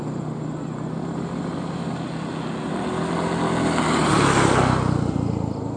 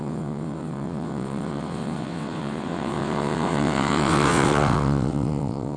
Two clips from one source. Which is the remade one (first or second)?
second